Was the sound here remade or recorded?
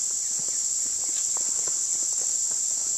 recorded